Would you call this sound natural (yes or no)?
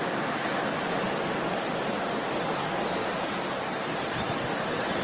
yes